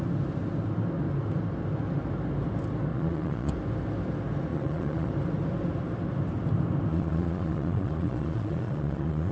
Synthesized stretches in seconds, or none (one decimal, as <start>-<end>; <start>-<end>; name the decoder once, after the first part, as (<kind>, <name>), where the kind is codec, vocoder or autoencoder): 2.9-3.5 (vocoder, Vocos); 4.5-5.1; 6.9-9.3